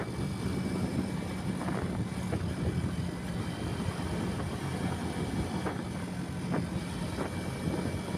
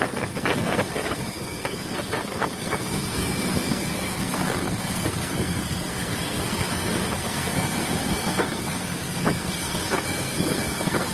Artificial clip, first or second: second